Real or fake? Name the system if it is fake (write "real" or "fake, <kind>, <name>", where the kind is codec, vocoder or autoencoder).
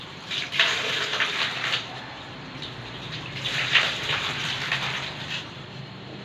fake, vocoder, BigVGAN v2